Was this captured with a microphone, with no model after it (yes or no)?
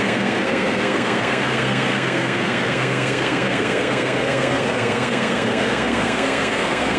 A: no